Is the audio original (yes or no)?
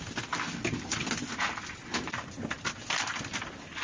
yes